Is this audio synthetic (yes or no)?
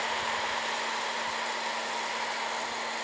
no